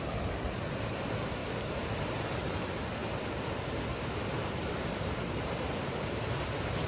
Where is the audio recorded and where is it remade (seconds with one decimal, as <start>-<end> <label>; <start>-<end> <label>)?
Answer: 0.0-6.9 recorded